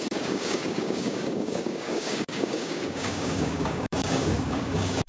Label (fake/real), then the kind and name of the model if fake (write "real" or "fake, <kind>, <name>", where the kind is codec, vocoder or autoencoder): fake, codec, DAC